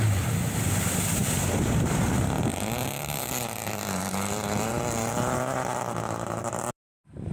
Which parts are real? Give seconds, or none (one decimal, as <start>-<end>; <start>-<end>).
0.0-1.2; 2.0-2.5